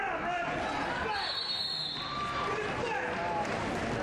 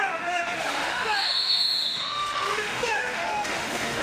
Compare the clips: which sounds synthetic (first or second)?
second